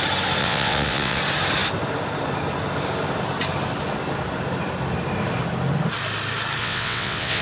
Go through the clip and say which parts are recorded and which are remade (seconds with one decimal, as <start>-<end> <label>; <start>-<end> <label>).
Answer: 0.0-0.4 recorded; 0.4-1.2 remade; 1.2-6.6 recorded; 6.6-7.4 remade